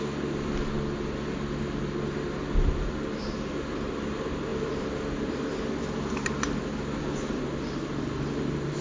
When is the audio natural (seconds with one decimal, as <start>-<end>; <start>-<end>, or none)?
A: 0.0-8.8

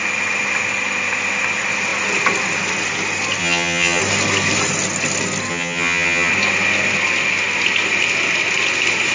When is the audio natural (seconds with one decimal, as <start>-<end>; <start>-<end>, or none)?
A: 0.0-3.4; 4.0-5.5; 6.3-9.1

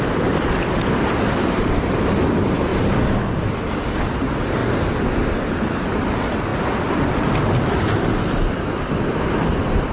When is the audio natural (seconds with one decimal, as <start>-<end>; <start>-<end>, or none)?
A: 2.7-3.2

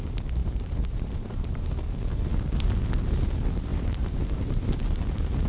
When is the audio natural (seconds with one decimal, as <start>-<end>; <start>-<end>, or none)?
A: 0.0-0.4; 1.7-3.7; 5.0-5.5

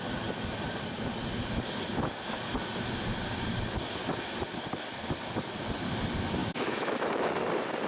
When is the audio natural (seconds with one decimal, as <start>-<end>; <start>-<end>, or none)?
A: 0.0-6.4; 7.3-7.9